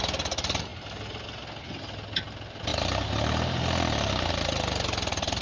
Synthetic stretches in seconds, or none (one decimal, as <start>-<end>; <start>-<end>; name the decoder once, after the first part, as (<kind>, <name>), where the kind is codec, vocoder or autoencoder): none